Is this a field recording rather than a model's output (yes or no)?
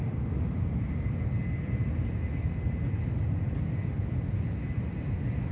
yes